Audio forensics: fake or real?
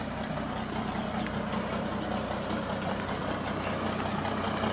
real